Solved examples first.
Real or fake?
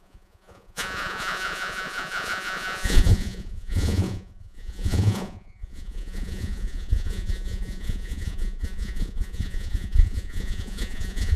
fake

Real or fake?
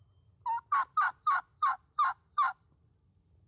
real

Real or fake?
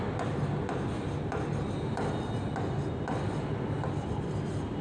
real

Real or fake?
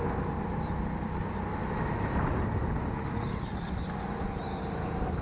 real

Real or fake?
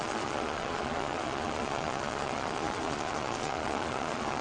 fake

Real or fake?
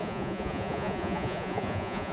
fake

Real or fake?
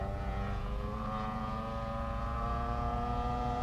fake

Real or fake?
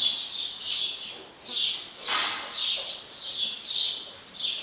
real